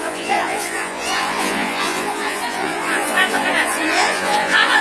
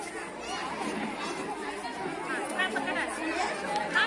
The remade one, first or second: first